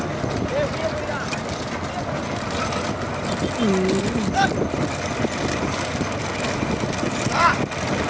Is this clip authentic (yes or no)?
yes